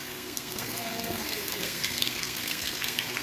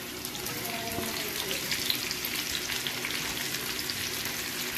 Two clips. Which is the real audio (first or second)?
second